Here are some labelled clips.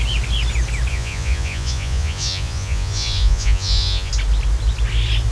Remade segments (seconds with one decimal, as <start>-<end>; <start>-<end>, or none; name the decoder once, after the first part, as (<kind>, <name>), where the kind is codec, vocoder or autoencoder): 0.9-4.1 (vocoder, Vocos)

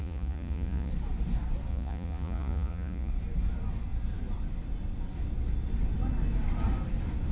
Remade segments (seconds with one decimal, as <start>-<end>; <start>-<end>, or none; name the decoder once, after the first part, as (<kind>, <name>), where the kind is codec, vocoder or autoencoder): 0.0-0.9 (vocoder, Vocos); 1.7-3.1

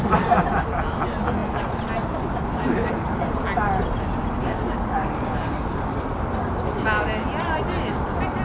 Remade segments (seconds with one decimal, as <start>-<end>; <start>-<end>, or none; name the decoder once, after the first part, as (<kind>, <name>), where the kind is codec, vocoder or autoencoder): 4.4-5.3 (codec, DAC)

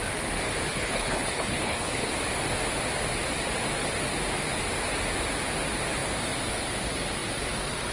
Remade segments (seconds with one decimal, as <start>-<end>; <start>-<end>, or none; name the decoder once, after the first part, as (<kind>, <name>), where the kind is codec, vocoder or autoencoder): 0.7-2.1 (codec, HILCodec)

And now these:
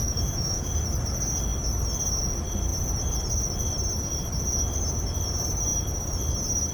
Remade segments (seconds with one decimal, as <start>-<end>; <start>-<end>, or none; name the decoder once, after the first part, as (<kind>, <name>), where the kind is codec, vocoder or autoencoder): 0.0-0.7 (autoencoder, DAC-VAE)

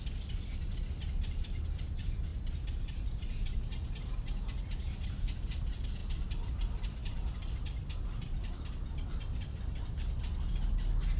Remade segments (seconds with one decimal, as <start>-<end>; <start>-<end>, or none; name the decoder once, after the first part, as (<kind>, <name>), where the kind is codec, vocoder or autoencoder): none